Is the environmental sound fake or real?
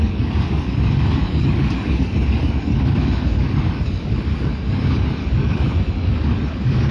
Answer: fake